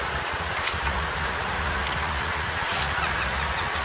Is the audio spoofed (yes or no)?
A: yes